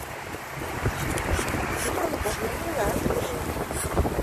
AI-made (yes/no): no